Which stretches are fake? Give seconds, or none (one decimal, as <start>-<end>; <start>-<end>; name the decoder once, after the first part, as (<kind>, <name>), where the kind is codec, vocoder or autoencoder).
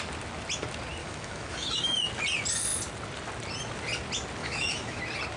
1.0-2.1 (autoencoder, DAC-VAE); 4.4-5.0